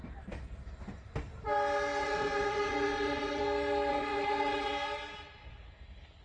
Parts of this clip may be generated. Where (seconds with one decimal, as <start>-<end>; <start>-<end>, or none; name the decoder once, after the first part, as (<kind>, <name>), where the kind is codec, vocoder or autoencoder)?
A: 2.0-3.4 (vocoder, WaveNeXt); 3.9-4.7